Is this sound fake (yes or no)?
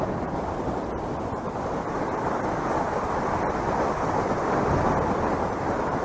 yes